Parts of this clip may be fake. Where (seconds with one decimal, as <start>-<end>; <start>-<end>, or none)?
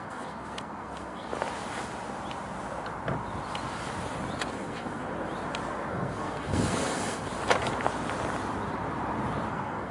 0.0-1.3; 4.5-5.0; 5.9-7.3; 9.5-9.9